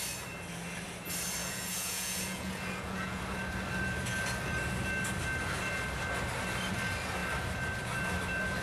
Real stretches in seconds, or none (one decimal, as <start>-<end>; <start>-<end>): 0.0-1.4; 3.2-8.6